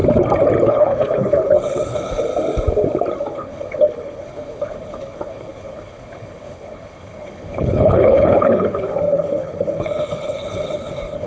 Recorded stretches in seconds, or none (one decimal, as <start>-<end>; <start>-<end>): 0.0-0.6; 2.3-3.2